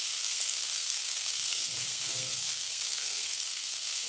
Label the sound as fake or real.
fake